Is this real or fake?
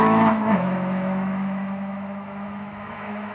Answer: fake